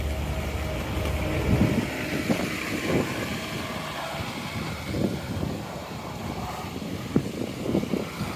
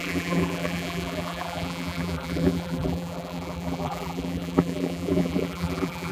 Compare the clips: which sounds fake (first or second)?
second